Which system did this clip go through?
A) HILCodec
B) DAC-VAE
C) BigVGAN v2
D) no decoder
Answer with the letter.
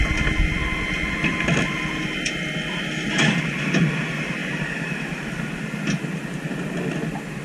D